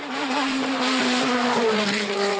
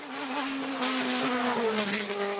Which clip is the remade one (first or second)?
first